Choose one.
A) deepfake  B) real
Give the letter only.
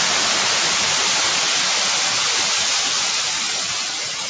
B